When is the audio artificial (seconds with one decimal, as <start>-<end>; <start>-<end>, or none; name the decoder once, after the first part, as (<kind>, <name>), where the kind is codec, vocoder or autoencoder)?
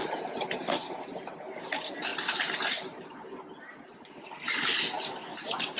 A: 0.0-0.7 (vocoder, BigVGAN v2)